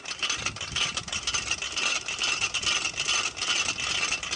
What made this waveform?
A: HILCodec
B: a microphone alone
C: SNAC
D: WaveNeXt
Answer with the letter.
B